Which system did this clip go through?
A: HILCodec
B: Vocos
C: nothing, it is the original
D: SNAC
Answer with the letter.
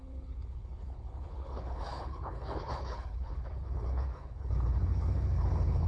A